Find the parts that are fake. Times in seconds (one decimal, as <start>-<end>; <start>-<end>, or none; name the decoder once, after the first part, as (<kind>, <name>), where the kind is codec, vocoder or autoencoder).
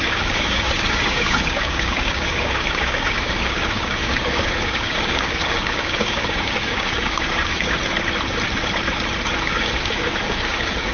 0.0-7.8 (codec, DAC); 9.4-10.9